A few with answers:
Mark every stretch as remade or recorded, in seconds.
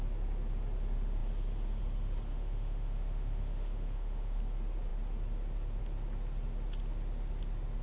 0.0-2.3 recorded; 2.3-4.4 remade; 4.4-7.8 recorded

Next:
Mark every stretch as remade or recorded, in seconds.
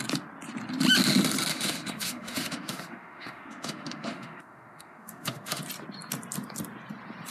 0.0-1.5 recorded; 1.5-5.6 remade; 5.6-7.3 recorded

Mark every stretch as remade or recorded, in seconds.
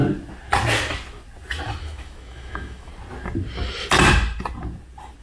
0.0-1.8 recorded; 1.8-2.9 remade; 2.9-5.2 recorded